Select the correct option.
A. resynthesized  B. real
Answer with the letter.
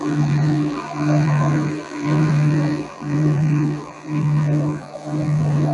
A